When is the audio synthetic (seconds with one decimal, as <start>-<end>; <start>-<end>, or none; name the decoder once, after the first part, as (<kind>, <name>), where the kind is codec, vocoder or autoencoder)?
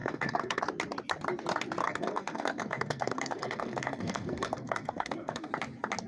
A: 0.0-0.6 (codec, SNAC); 1.8-5.5